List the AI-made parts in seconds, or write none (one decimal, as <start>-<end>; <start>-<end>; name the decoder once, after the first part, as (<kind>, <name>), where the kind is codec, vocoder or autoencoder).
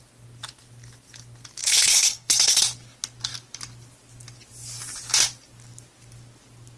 1.6-2.6 (codec, HILCodec)